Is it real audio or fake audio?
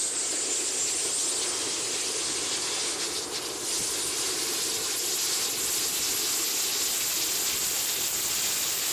real